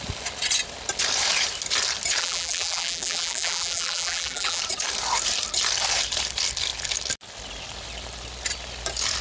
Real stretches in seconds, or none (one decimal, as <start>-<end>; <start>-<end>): 0.0-2.2; 4.6-9.2